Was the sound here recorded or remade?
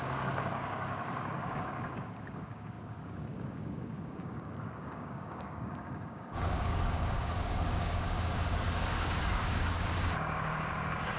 remade